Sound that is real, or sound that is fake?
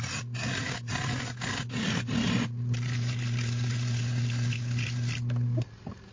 real